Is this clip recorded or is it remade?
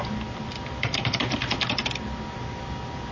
recorded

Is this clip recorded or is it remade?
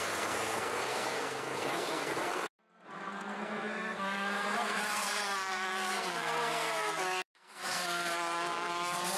remade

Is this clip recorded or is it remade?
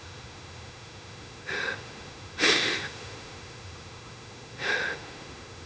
remade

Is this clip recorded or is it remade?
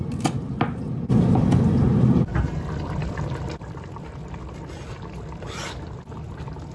recorded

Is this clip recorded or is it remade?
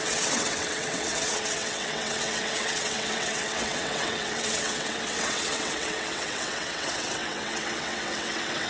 remade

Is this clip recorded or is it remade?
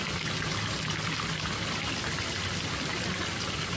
recorded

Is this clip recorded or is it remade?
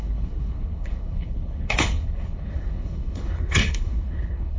remade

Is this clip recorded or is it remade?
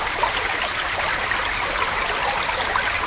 recorded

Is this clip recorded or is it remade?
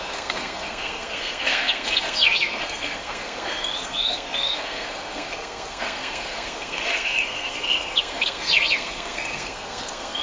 remade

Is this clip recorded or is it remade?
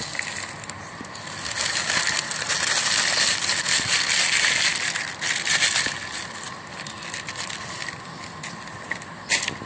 recorded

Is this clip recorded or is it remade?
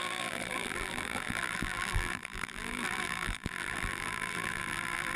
remade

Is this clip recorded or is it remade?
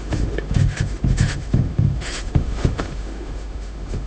remade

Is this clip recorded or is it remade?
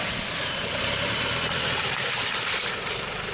remade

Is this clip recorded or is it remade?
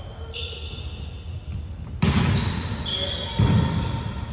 recorded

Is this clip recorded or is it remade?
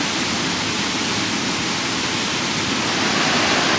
recorded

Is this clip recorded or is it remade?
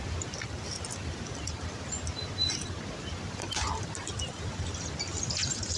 recorded